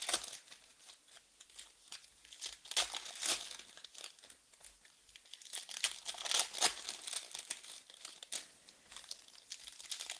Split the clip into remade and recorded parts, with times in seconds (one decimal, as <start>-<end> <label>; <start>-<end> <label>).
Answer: 0.0-10.2 recorded